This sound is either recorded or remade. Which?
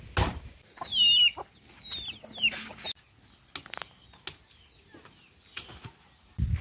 recorded